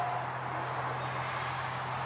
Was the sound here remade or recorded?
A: recorded